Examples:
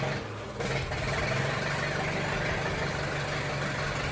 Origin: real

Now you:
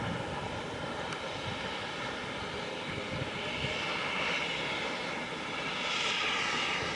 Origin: real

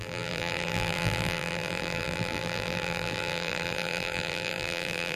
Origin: fake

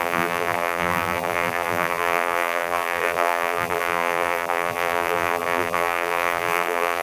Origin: fake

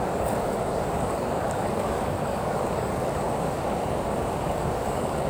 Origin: fake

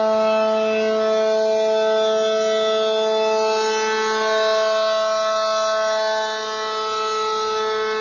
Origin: real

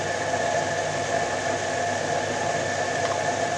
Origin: real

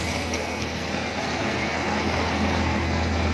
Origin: fake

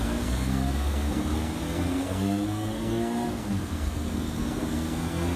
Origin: fake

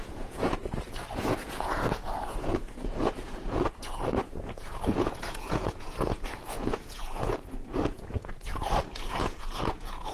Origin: fake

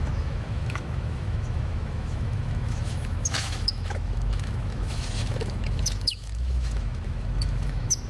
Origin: fake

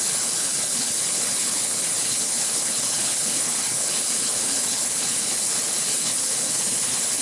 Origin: fake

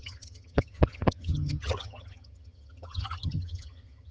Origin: fake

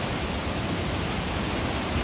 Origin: real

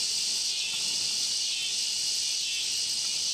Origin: real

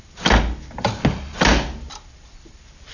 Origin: real